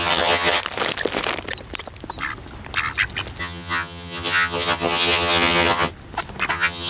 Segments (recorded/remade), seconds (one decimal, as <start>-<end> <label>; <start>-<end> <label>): 0.0-0.6 remade; 0.6-3.4 recorded; 3.4-5.9 remade; 5.9-6.5 recorded; 6.5-6.9 remade